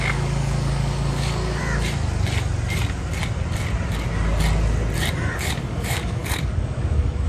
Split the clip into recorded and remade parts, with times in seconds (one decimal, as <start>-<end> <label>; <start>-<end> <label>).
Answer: 0.0-1.6 remade; 1.6-5.1 recorded; 5.1-7.3 remade